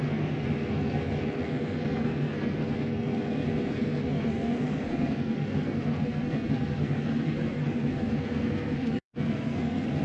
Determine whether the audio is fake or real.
fake